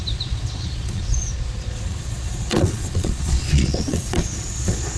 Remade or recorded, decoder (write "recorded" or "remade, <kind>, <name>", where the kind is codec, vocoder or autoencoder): remade, vocoder, Vocos